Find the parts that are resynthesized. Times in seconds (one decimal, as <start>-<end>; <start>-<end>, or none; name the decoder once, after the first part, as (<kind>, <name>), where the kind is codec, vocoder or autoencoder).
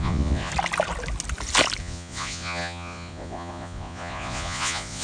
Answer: 0.0-0.5 (vocoder, Vocos); 1.8-5.0